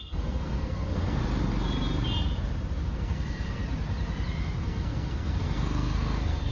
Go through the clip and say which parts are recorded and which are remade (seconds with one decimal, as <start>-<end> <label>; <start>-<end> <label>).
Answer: 0.0-1.2 remade; 1.2-2.9 recorded; 2.9-3.6 remade; 3.6-4.6 recorded; 4.6-6.5 remade